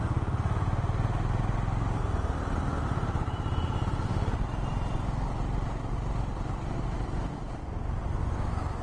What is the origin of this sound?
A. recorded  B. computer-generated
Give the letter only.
A